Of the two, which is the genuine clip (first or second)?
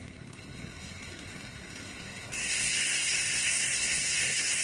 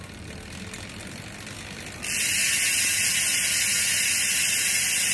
second